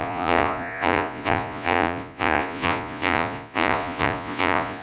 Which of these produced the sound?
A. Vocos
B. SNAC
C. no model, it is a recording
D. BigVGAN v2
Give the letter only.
A